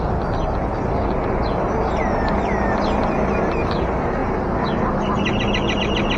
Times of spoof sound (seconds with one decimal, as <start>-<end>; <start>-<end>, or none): none